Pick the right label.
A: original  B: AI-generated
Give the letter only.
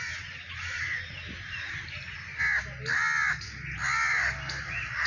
A